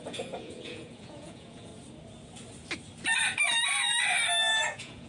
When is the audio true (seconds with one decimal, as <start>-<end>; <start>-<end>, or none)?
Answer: 1.7-4.6